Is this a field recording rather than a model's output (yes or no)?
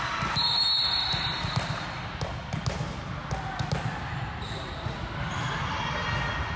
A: yes